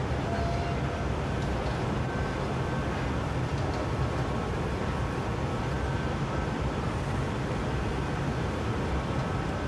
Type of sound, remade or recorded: recorded